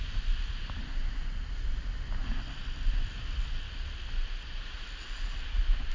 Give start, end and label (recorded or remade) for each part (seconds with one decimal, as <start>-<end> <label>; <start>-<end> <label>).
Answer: 0.0-5.9 recorded

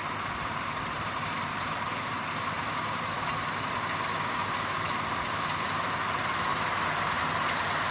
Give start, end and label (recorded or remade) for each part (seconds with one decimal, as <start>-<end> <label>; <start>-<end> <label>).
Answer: 0.0-3.7 remade; 3.7-6.5 recorded; 6.5-7.2 remade; 7.2-7.9 recorded

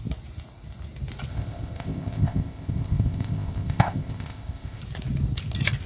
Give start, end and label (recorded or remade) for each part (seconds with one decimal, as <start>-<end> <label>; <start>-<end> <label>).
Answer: 0.0-1.3 recorded; 1.3-4.8 remade; 4.8-5.9 recorded

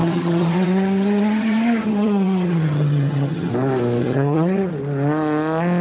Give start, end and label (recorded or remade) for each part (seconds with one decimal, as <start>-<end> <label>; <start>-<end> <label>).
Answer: 0.0-3.5 remade; 3.5-4.0 recorded; 4.0-4.7 remade; 4.7-5.8 recorded

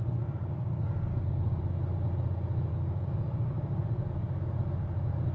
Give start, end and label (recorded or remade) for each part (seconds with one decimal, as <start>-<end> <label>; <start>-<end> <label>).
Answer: 0.0-0.6 recorded; 0.6-1.6 remade; 1.6-2.7 recorded; 2.7-3.8 remade; 3.8-5.3 recorded

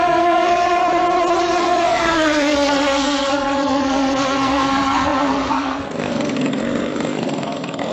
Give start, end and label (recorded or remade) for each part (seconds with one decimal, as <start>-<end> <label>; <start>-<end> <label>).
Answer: 0.0-0.8 remade; 0.8-1.4 recorded; 1.4-7.9 remade

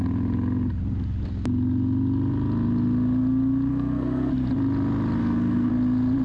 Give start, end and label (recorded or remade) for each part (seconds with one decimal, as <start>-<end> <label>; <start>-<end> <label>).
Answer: 0.0-3.7 recorded; 3.7-4.3 remade; 4.3-5.2 recorded; 5.2-5.7 remade; 5.7-6.2 recorded